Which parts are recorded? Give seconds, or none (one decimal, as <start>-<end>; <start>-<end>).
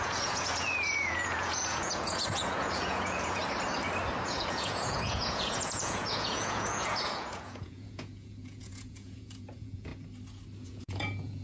3.4-4.2; 9.9-10.6